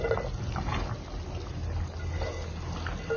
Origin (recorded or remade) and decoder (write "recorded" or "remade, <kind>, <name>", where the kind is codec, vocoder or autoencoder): recorded